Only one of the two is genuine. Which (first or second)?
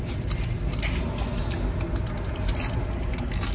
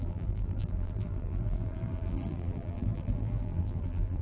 first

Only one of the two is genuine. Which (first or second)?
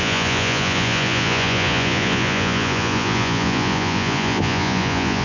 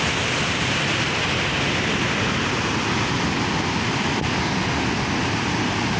second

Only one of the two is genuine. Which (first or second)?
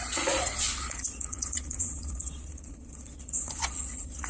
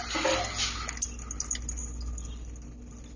second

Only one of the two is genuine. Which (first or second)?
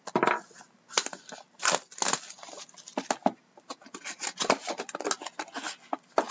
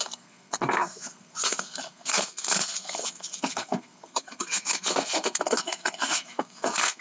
first